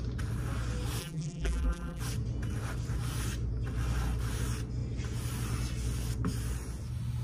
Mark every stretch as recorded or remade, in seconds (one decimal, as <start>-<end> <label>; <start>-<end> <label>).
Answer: 0.0-1.0 recorded; 1.0-2.0 remade; 2.0-7.2 recorded